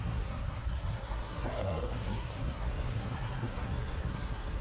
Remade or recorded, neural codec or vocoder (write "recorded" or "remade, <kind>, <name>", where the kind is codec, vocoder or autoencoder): remade, codec, SNAC